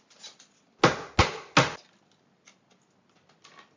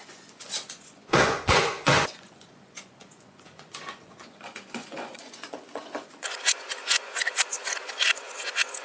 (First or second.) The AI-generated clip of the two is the second